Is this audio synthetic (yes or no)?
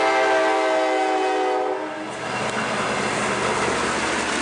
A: no